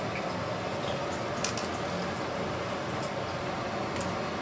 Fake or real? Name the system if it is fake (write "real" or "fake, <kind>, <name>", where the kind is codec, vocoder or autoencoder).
real